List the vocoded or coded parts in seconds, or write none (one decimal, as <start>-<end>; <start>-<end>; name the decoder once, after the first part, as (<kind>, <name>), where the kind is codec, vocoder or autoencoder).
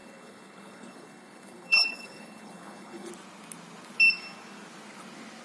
0.0-3.1 (codec, HILCodec)